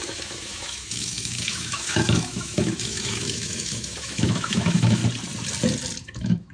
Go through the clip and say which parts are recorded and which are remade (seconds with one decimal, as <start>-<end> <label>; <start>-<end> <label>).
0.0-5.0 remade; 5.0-6.0 recorded; 6.0-6.5 remade